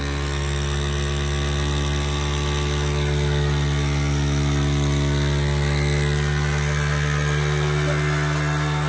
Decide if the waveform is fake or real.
real